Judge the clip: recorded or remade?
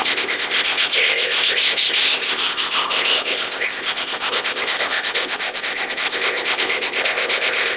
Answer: remade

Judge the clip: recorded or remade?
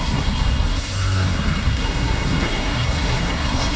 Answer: remade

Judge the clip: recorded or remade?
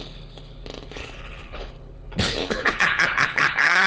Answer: remade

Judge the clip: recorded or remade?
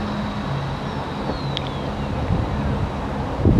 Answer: recorded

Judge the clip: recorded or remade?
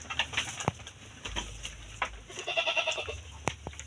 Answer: recorded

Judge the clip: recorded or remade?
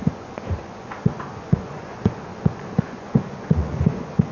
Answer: remade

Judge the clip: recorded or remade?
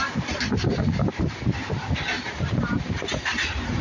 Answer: remade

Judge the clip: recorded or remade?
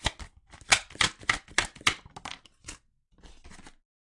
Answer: recorded